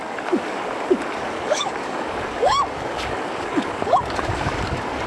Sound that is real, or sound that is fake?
fake